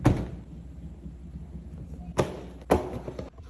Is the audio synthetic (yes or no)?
no